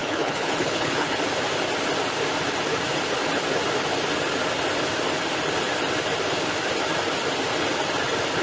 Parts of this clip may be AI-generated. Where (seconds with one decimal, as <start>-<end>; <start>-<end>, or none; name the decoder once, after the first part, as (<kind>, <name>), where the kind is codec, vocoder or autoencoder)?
0.0-1.1 (codec, HILCodec)